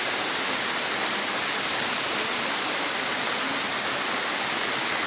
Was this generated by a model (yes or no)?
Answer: no